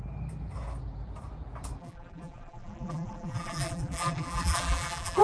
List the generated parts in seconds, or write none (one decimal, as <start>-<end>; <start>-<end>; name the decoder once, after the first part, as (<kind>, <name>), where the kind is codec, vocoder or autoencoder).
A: 1.8-5.2 (vocoder, BigVGAN v2)